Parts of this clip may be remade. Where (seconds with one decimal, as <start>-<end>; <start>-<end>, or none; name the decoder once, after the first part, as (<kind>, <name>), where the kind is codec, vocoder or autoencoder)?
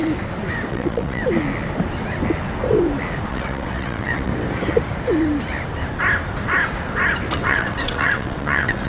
0.7-1.2 (vocoder, WaveNeXt); 3.3-4.3; 7.3-8.9